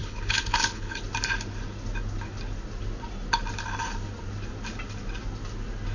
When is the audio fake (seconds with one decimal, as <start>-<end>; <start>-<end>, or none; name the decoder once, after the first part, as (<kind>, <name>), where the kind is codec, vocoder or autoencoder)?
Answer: 0.0-1.0 (codec, HILCodec)